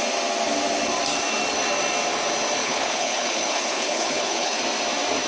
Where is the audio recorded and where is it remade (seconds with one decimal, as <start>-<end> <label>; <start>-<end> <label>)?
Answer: 0.0-2.6 recorded; 2.6-4.6 remade; 4.6-5.3 recorded